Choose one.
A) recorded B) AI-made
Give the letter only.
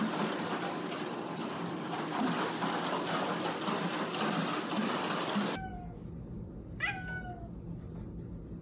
A